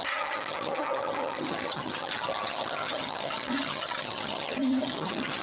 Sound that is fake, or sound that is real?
fake